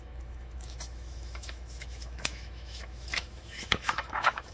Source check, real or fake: fake